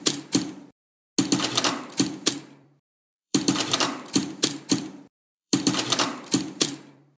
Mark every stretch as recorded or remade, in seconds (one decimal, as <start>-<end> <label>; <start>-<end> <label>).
0.0-0.8 remade; 0.8-2.3 recorded; 2.3-7.2 remade